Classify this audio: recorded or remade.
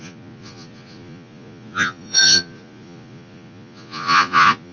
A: remade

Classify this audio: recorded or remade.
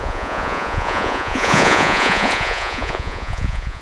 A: remade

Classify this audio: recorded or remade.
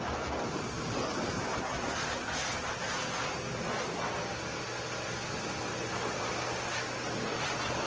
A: recorded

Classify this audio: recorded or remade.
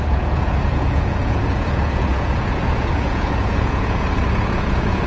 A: remade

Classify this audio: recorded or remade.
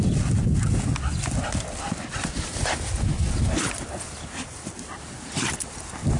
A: recorded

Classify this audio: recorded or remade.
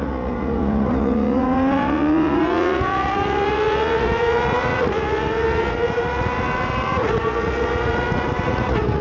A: remade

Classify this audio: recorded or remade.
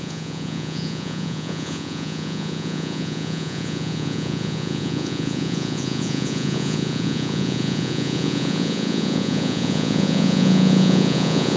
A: remade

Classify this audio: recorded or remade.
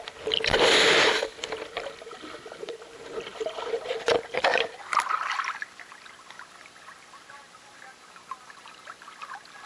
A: recorded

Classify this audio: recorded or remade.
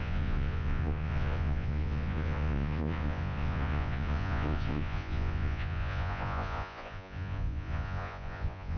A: remade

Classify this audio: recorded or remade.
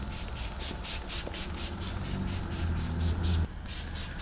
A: recorded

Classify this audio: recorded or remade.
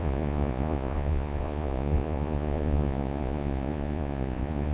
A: remade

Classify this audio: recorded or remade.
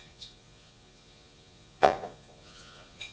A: remade